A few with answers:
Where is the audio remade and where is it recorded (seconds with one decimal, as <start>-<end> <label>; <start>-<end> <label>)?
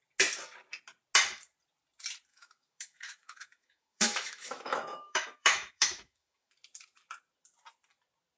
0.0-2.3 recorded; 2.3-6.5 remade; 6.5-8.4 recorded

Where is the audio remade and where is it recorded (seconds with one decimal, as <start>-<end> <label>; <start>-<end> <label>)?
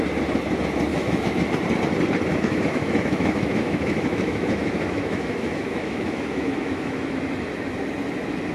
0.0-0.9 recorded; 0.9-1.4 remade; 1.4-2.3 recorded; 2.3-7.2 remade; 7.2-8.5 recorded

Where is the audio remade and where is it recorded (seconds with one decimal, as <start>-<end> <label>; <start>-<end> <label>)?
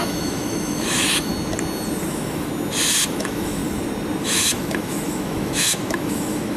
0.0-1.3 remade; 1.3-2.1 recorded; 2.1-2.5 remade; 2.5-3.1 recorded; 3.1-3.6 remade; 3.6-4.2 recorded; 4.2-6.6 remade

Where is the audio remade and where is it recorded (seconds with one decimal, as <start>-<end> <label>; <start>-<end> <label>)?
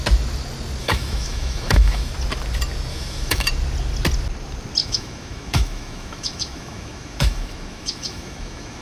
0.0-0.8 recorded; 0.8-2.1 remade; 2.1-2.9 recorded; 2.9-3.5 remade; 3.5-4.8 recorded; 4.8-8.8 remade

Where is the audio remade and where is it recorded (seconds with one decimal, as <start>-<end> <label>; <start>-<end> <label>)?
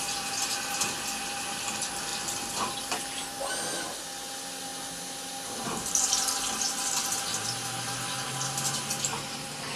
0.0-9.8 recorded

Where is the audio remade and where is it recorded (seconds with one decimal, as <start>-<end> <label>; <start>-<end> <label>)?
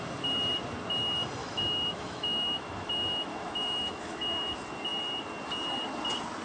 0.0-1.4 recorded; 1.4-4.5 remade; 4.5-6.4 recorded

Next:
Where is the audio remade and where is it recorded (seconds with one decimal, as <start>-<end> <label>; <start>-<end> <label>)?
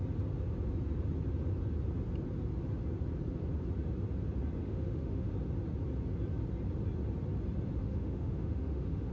0.0-4.6 recorded; 4.6-5.3 remade; 5.3-7.8 recorded; 7.8-9.1 remade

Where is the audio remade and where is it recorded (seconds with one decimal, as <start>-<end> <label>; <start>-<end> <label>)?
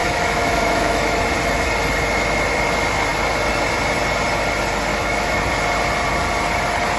0.0-1.2 remade; 1.2-4.9 recorded; 4.9-5.4 remade; 5.4-7.0 recorded